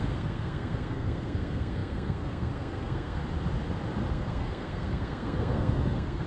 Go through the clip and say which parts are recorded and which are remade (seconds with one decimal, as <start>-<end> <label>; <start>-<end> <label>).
0.0-3.2 remade; 3.2-4.1 recorded; 4.1-6.3 remade